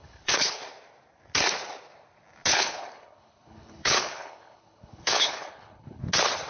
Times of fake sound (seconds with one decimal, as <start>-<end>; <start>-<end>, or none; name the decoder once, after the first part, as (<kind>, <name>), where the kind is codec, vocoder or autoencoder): 0.0-0.6 (codec, HILCodec); 2.5-6.0